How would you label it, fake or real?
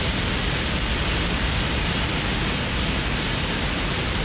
real